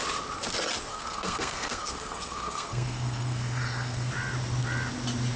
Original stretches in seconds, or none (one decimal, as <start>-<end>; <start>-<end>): 0.0-0.9; 4.1-5.4